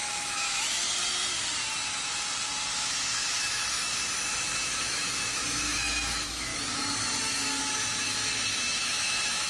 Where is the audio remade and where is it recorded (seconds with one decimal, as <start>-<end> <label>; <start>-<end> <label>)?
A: 0.0-0.8 remade; 0.8-2.7 recorded; 2.7-6.5 remade; 6.5-7.2 recorded; 7.2-9.5 remade

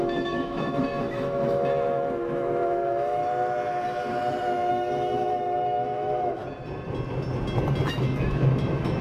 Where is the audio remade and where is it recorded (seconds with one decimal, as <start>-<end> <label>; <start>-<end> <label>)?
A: 0.0-3.2 remade; 3.2-4.7 recorded; 4.7-6.4 remade; 6.4-7.9 recorded; 7.9-9.0 remade

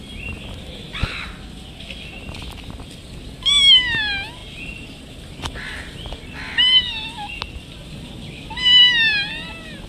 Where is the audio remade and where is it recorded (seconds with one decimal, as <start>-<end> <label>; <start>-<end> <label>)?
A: 0.0-9.9 recorded

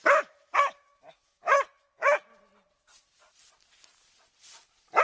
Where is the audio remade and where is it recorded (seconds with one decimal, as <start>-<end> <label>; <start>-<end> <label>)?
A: 0.0-2.3 remade; 2.3-5.0 recorded

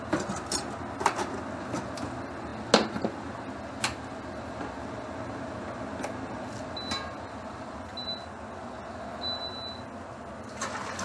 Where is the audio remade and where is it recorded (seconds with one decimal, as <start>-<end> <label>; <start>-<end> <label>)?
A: 0.0-11.0 recorded

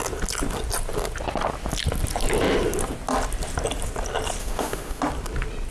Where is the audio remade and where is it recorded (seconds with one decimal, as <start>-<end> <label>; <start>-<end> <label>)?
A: 0.0-4.4 recorded; 4.4-5.0 remade; 5.0-5.7 recorded